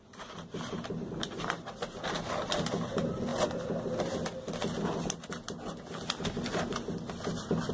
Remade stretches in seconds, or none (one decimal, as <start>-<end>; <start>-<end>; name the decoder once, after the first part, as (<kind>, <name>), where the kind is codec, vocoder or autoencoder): 0.0-2.1 (vocoder, BigVGAN v2)